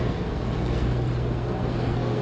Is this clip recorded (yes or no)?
no